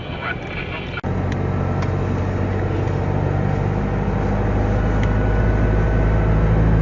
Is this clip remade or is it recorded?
recorded